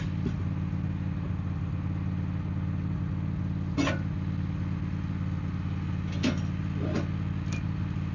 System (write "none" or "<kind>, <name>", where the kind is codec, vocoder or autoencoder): none